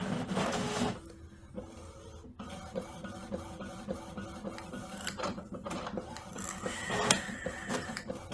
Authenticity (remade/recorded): recorded